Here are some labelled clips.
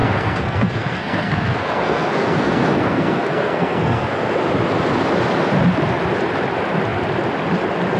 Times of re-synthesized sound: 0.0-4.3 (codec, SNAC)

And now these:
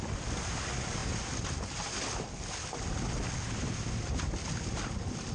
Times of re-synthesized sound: none

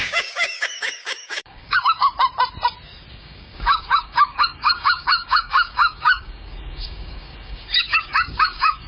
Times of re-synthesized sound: 0.0-2.1 (codec, DAC); 3.1-8.9

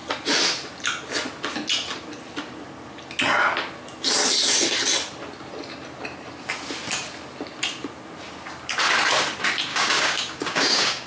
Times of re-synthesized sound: 9.7-11.1 (codec, DAC)

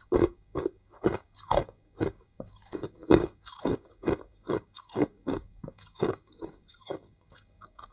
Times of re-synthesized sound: 0.0-7.9 (codec, DAC)

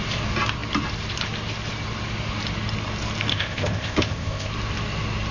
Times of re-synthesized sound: 3.3-4.5 (codec, ZipCodec)